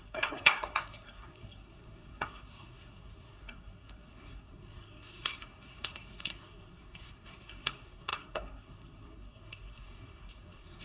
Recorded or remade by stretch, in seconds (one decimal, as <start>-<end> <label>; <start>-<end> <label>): 0.0-10.8 remade